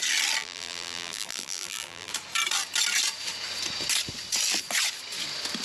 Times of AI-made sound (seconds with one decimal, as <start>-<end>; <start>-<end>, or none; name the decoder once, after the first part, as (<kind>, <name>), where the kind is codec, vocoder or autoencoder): 0.4-2.1 (vocoder, BigVGAN v2)